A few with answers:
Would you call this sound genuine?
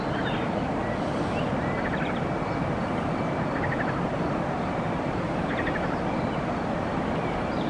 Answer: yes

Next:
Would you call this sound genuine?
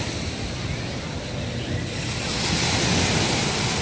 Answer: yes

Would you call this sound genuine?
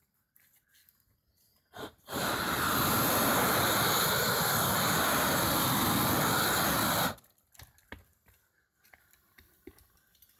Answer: yes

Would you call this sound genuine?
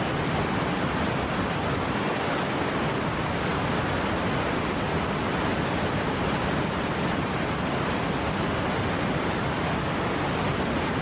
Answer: yes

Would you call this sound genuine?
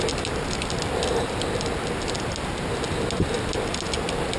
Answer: yes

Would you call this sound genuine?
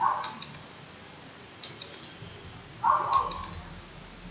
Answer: yes